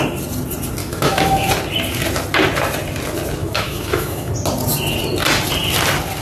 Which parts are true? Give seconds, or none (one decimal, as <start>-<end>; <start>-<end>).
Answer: 0.0-0.8; 1.5-3.4; 4.3-6.2